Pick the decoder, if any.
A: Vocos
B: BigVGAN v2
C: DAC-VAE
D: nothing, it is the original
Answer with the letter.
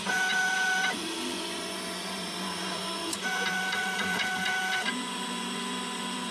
A